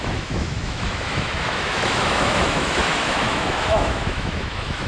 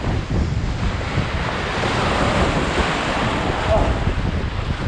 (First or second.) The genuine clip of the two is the second